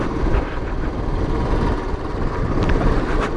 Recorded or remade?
remade